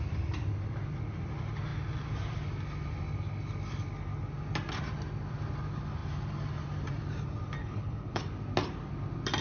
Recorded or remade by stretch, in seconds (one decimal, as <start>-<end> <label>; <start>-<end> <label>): 0.0-7.6 recorded; 7.6-8.2 remade; 8.2-9.4 recorded